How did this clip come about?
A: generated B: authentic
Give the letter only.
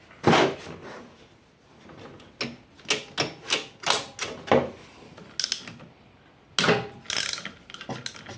B